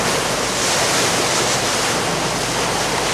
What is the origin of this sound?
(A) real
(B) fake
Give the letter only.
A